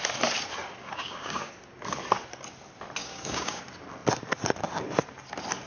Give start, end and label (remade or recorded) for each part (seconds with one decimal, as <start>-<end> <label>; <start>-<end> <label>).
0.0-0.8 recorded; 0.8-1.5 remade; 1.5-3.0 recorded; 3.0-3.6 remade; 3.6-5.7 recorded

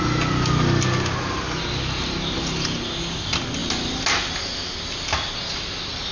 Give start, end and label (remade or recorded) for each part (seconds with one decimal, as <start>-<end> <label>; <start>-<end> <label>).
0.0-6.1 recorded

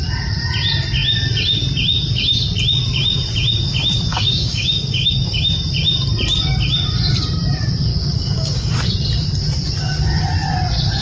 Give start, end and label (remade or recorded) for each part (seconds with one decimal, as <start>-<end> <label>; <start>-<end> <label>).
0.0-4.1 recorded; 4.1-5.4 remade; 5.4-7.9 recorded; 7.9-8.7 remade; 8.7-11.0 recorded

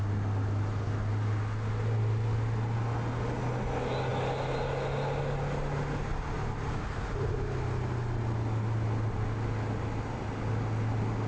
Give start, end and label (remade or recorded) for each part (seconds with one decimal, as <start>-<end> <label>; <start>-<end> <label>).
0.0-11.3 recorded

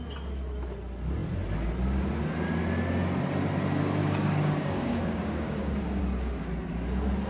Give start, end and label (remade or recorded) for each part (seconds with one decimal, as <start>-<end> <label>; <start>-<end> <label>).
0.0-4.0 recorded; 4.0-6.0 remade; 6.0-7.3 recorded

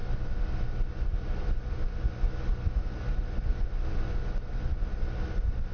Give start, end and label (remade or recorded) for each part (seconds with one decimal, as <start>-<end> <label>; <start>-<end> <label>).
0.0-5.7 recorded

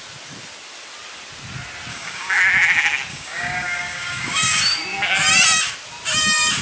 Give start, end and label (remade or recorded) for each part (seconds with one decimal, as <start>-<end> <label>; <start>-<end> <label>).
0.0-1.9 recorded; 1.9-2.4 remade; 2.4-3.1 recorded; 3.1-4.6 remade; 4.6-6.6 recorded

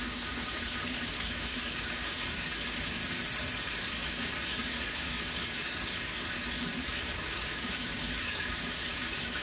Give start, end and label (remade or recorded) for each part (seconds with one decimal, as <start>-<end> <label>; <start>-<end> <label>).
0.0-3.0 remade; 3.0-3.7 recorded; 3.7-9.4 remade